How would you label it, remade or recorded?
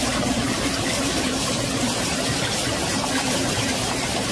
recorded